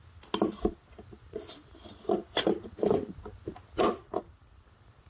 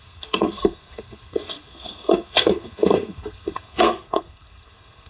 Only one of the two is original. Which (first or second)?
first